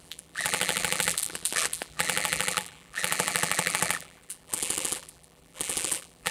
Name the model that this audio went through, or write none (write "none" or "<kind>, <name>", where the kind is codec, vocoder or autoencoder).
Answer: vocoder, BigVGAN v2